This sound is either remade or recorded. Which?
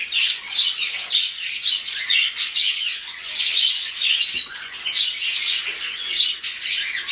remade